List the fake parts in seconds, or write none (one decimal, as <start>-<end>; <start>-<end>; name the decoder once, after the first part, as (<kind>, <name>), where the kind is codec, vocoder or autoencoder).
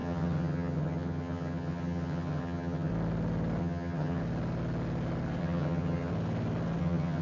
0.0-2.9 (vocoder, HiFi-GAN); 3.6-4.2; 5.4-6.1; 6.8-7.2